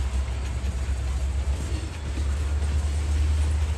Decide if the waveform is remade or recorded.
recorded